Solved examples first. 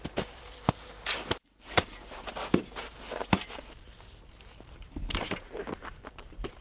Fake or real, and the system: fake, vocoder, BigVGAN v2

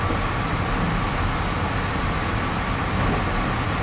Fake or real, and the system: real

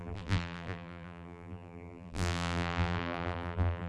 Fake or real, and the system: fake, vocoder, BigVGAN v2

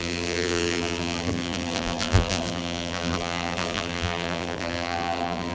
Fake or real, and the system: fake, vocoder, BigVGAN v2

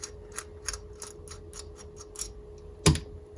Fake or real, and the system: real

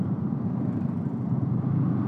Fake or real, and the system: fake, vocoder, BigVGAN v2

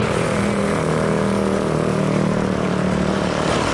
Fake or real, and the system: fake, vocoder, BigVGAN v2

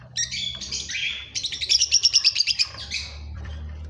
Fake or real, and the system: fake, vocoder, BigVGAN v2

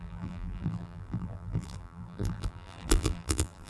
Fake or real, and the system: fake, vocoder, BigVGAN v2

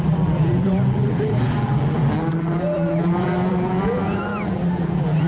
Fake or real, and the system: fake, vocoder, BigVGAN v2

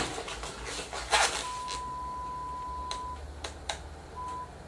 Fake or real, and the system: real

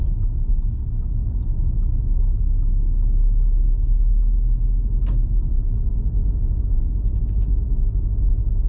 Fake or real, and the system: real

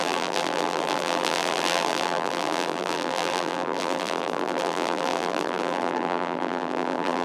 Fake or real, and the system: fake, vocoder, BigVGAN v2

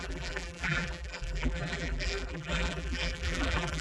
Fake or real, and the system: fake, vocoder, BigVGAN v2